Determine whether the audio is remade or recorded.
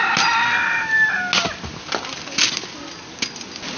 recorded